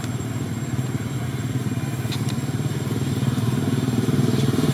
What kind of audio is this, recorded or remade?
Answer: remade